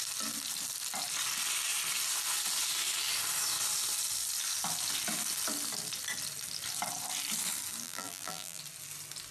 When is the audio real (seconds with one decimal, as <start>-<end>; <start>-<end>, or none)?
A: 0.0-7.8; 8.6-9.3